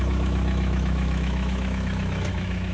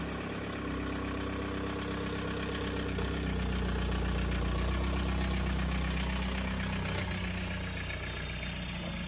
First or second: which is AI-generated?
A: first